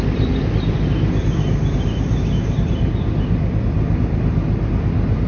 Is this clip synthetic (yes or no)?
no